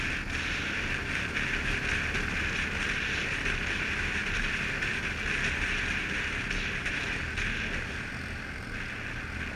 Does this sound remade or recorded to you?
recorded